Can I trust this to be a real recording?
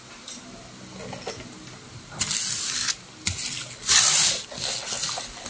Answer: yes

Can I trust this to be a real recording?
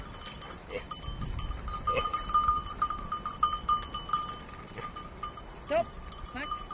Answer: yes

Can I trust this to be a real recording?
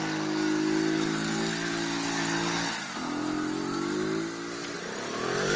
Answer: yes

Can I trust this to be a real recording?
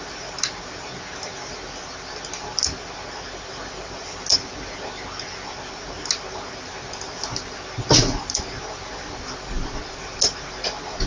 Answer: yes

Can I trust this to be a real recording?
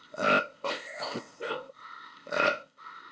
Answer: no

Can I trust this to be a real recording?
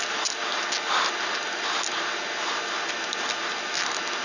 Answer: yes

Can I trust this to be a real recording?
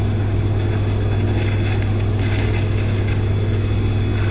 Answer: yes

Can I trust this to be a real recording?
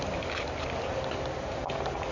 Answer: yes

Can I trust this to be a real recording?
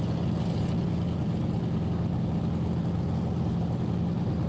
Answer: yes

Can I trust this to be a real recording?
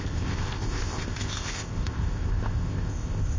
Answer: no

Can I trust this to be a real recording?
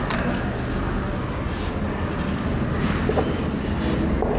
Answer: yes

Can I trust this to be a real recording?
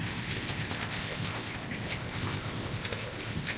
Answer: no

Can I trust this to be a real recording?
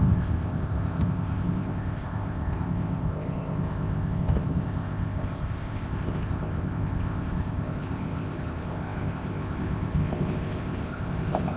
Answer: no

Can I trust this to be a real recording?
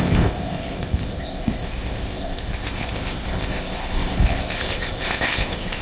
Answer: no